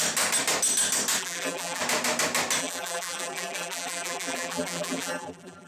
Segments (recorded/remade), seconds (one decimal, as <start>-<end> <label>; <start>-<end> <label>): 0.0-1.2 recorded; 1.2-1.8 remade; 1.8-2.6 recorded; 2.6-5.7 remade

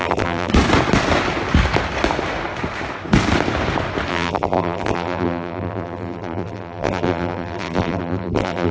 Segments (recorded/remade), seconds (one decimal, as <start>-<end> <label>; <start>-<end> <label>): 0.0-0.5 remade; 0.5-4.1 recorded; 4.1-8.7 remade

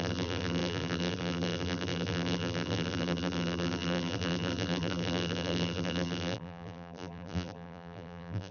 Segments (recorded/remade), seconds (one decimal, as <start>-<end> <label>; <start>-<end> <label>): 0.0-8.5 remade

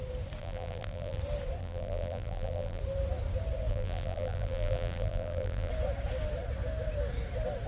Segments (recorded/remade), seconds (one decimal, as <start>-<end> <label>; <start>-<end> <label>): 0.0-0.4 recorded; 0.4-1.2 remade; 1.2-1.6 recorded; 1.6-2.8 remade; 2.8-3.7 recorded; 3.7-5.7 remade; 5.7-7.7 recorded